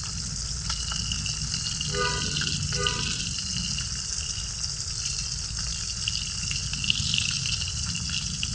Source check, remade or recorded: recorded